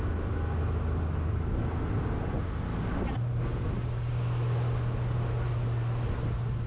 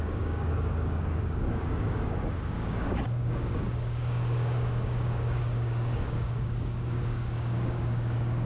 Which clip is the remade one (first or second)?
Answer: second